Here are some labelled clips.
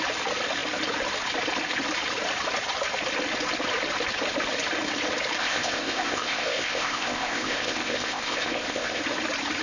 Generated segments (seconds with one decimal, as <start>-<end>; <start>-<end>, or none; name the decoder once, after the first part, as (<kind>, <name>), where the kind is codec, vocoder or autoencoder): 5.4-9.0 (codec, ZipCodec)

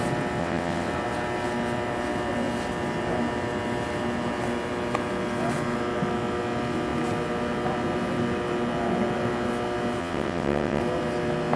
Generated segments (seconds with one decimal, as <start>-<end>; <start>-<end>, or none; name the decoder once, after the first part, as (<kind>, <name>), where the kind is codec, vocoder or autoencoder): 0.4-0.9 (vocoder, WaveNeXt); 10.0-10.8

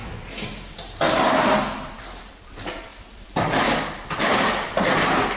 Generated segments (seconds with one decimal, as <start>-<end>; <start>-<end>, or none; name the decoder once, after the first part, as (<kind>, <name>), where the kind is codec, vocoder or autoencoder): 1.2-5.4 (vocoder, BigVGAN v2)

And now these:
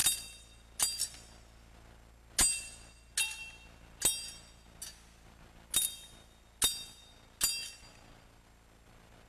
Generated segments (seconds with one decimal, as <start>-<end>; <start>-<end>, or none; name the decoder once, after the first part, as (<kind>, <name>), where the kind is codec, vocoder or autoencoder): none

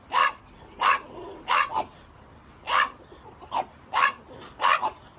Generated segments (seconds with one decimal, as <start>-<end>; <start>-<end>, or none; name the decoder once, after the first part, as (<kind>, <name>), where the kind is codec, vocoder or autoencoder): none